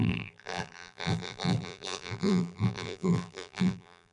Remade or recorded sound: remade